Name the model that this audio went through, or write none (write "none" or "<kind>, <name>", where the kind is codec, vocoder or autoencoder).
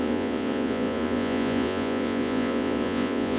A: vocoder, Vocos